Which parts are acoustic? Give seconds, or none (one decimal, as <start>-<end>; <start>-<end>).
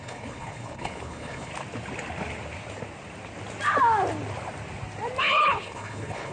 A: 1.5-5.2